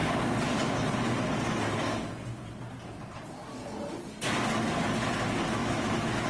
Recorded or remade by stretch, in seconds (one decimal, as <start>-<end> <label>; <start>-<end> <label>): 0.0-5.6 recorded; 5.6-6.3 remade